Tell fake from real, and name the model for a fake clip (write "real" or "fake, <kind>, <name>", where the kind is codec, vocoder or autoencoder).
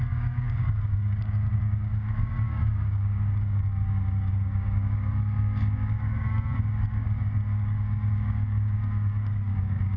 fake, codec, DAC